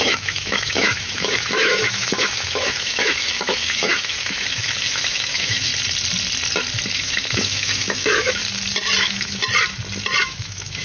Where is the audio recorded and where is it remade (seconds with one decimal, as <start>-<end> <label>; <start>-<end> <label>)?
0.0-5.7 remade; 5.7-6.9 recorded; 6.9-8.4 remade; 8.4-9.0 recorded; 9.0-9.4 remade; 9.4-10.2 recorded; 10.2-10.8 remade